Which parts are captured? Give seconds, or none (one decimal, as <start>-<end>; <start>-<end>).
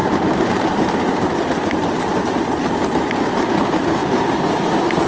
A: 3.1-4.0; 4.6-5.1